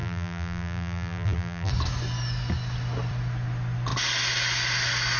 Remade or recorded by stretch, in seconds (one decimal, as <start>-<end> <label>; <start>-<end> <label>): 0.0-1.7 remade; 1.7-5.2 recorded